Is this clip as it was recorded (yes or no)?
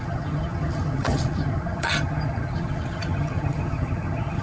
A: no